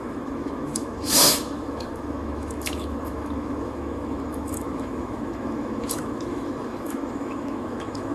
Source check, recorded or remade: remade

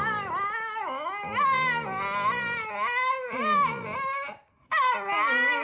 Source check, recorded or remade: recorded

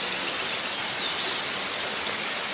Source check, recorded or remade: recorded